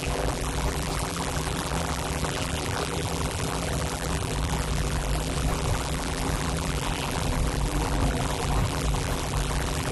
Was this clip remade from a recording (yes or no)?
yes